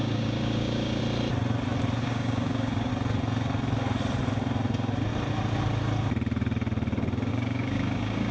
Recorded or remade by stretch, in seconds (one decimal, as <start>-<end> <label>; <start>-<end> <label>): 0.0-1.0 remade; 1.0-2.0 recorded; 2.0-2.9 remade; 2.9-7.3 recorded; 7.3-8.3 remade